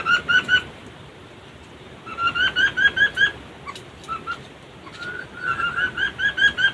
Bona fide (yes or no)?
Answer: yes